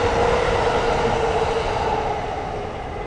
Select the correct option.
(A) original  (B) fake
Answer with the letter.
A